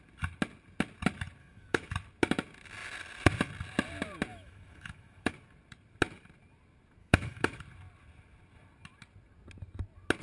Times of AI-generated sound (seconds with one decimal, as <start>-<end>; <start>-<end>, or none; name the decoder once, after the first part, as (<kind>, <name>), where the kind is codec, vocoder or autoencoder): 1.4-1.9 (autoencoder, DAC-VAE); 4.3-5.3; 7.0-7.6